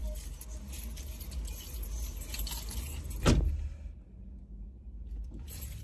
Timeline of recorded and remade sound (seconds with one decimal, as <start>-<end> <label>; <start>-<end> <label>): 0.0-5.8 recorded